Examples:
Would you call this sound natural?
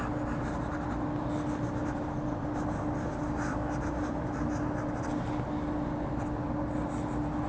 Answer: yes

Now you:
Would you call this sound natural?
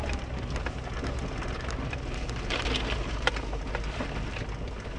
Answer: yes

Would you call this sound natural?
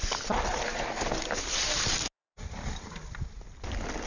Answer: yes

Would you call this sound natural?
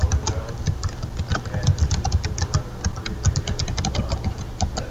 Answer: yes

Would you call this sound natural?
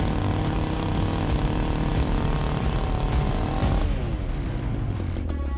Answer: yes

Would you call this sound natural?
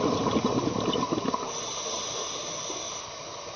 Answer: yes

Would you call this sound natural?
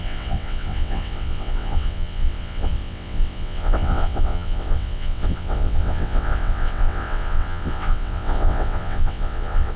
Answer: no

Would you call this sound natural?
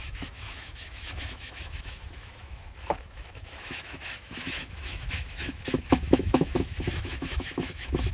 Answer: no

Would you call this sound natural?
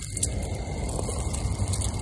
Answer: yes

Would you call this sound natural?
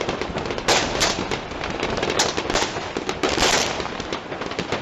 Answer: yes